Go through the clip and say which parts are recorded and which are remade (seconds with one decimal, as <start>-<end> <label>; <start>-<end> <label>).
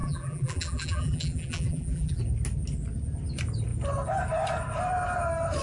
0.0-2.2 remade; 2.2-5.6 recorded